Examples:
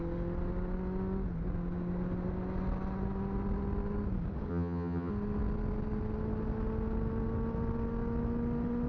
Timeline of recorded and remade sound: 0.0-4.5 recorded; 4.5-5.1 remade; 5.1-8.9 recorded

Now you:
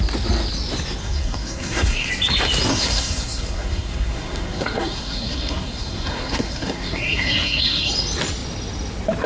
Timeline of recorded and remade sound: 0.0-1.0 recorded; 1.0-2.1 remade; 2.1-2.7 recorded; 2.7-7.9 remade; 7.9-9.3 recorded

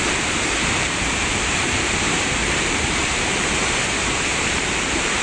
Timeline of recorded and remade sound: 0.0-0.6 recorded; 0.6-2.0 remade; 2.0-2.4 recorded; 2.4-3.5 remade; 3.5-4.3 recorded; 4.3-5.2 remade

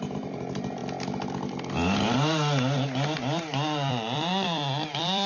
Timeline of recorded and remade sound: 0.0-0.8 remade; 0.8-3.9 recorded; 3.9-5.3 remade